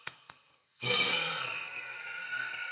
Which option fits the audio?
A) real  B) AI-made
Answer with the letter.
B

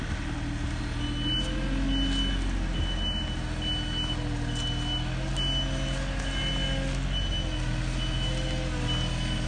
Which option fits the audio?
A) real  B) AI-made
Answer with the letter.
A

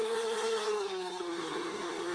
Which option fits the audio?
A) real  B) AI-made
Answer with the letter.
B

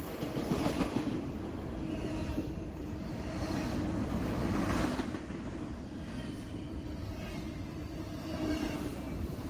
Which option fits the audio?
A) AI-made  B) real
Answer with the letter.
B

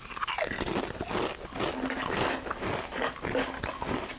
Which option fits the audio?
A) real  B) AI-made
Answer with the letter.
A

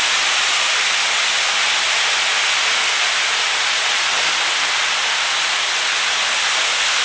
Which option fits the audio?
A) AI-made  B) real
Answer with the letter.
B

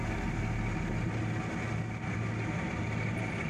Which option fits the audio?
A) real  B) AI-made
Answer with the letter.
A